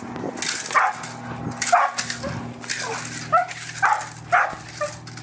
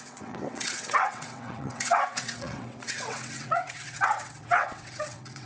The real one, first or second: first